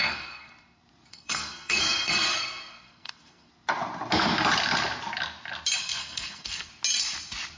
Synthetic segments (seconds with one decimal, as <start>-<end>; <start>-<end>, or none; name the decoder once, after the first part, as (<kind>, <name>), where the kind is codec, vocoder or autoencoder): 0.0-0.5 (codec, SNAC); 1.1-3.5; 5.8-6.7